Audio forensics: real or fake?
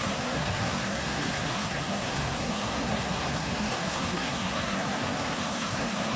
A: fake